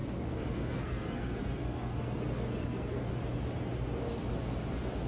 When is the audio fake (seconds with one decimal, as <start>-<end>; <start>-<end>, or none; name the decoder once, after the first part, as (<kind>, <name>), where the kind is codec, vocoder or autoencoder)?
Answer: 0.0-3.1 (codec, SNAC)

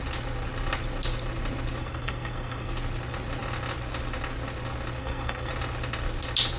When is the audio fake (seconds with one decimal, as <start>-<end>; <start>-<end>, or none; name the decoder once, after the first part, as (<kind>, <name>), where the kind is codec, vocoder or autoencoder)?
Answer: 1.8-2.7 (codec, SNAC); 5.0-5.5